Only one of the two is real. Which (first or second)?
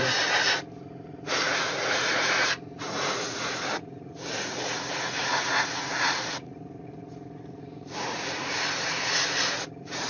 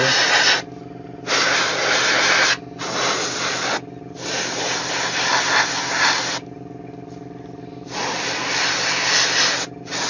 second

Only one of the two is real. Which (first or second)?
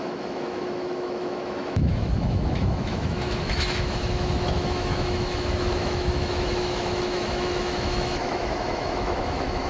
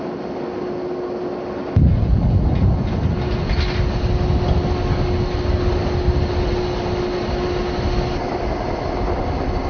second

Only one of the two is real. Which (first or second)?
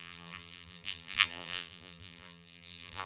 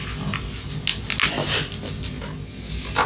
second